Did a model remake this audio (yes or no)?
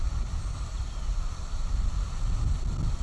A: no